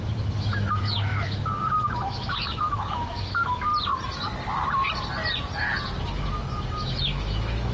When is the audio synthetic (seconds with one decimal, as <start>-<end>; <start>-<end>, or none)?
0.0-3.7; 6.0-7.7